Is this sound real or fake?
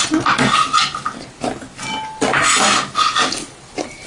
real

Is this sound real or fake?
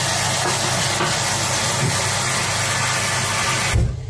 real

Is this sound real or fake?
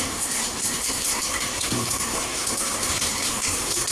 fake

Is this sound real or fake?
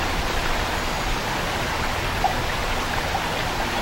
real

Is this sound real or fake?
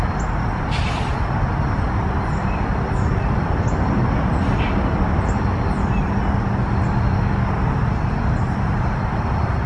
real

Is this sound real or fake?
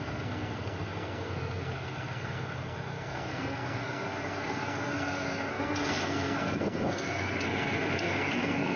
fake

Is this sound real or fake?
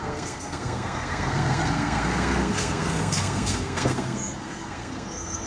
fake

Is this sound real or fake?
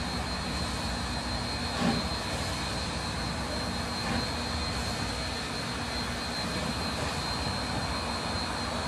real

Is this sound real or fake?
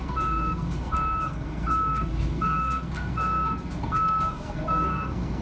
fake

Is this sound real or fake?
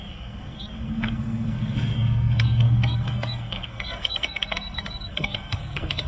fake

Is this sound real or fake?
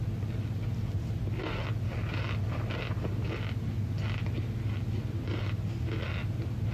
real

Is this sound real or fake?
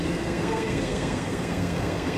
fake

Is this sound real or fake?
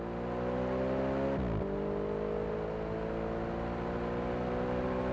real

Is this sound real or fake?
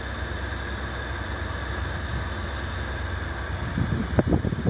real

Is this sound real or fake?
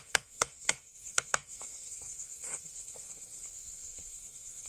fake